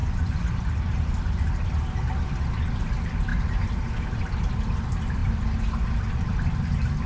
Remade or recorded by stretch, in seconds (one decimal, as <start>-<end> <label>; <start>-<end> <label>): 0.0-0.5 remade; 0.5-7.1 recorded